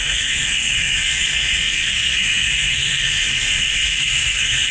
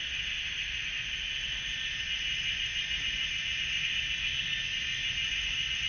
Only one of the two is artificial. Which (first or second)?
first